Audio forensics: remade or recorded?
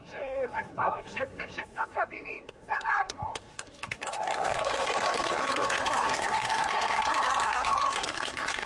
remade